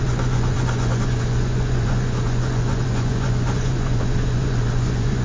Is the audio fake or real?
fake